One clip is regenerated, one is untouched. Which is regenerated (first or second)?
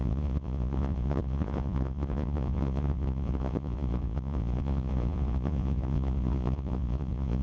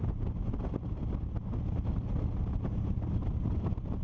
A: first